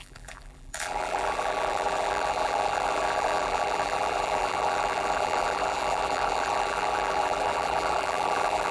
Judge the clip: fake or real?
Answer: fake